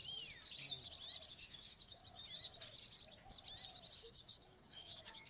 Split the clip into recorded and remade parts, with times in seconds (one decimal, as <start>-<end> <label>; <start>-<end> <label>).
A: 0.0-1.3 recorded; 1.3-2.0 remade; 2.0-4.0 recorded; 4.0-5.3 remade